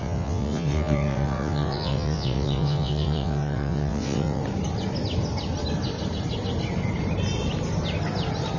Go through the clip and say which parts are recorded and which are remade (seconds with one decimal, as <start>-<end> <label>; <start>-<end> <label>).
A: 0.0-4.4 remade; 4.4-8.6 recorded